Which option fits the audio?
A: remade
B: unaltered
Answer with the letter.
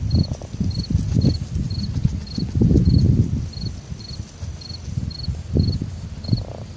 B